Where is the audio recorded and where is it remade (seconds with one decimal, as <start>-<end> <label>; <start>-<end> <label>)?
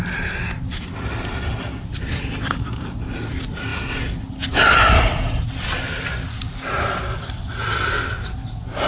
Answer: 0.0-8.9 recorded